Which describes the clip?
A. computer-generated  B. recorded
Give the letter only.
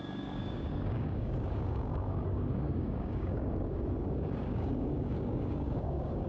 A